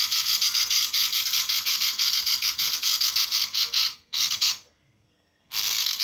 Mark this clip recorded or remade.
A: remade